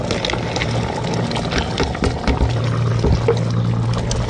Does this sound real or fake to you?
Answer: real